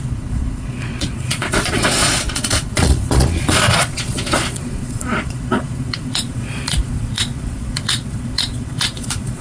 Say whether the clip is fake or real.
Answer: fake